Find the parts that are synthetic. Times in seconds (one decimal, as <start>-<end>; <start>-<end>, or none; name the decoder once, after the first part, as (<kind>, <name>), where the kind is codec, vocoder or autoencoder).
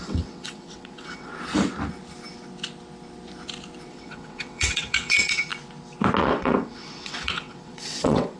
0.0-1.3 (vocoder, WaveNeXt); 3.9-5.5; 6.2-8.4